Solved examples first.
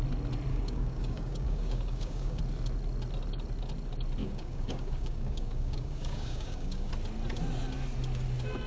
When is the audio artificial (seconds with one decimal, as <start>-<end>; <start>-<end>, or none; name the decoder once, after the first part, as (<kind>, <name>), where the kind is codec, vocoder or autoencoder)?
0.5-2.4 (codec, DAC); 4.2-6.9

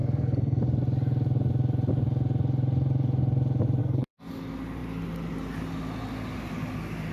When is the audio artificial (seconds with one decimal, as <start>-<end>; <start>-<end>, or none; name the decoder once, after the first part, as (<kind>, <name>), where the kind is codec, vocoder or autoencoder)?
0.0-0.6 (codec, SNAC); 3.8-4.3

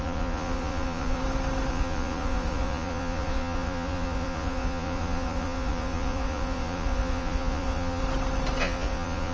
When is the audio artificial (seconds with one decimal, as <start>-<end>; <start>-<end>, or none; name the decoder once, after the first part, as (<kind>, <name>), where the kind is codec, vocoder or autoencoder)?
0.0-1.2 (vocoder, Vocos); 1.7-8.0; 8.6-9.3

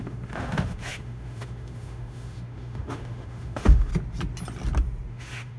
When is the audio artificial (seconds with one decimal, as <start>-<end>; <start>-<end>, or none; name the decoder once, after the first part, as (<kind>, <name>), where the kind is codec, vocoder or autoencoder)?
0.0-3.9 (autoencoder, DAC-VAE); 5.1-5.6

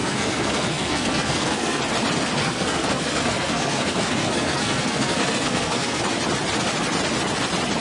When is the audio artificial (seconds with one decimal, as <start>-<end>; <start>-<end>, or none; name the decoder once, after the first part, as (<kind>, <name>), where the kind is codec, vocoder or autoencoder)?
0.0-1.8 (codec, SNAC); 2.4-6.0

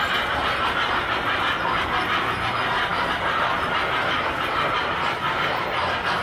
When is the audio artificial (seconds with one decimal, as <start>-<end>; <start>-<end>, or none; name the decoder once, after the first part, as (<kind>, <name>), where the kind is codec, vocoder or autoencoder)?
none